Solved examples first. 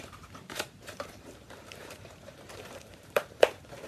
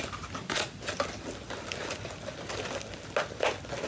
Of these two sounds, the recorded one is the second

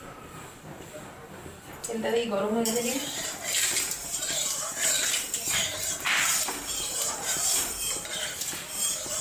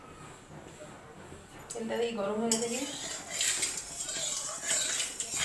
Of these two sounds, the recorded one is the second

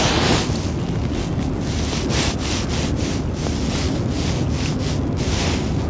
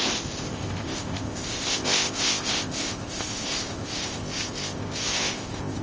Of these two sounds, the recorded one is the first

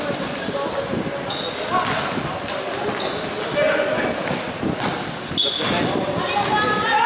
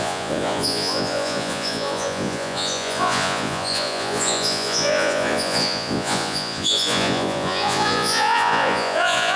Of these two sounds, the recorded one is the first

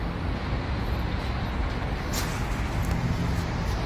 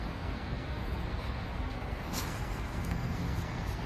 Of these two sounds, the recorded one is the first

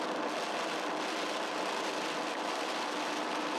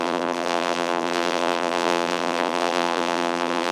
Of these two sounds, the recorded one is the first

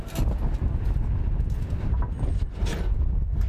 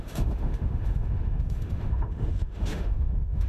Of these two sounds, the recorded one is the first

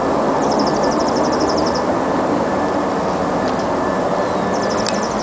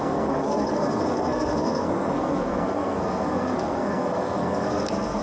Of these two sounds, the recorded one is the first